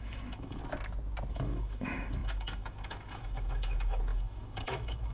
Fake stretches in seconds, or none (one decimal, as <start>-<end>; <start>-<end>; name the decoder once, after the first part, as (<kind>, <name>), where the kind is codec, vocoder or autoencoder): 0.0-0.6 (autoencoder, DAC-VAE); 1.3-5.1